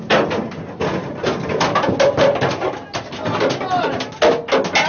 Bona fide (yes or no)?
yes